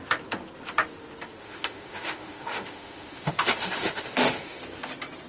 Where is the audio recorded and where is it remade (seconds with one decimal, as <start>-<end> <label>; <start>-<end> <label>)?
0.0-1.4 recorded; 1.4-4.6 remade; 4.6-5.3 recorded